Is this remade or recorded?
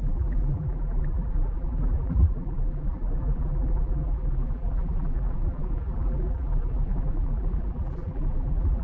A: remade